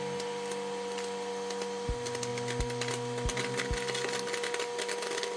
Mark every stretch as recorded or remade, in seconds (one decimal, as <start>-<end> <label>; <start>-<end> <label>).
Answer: 0.0-5.4 recorded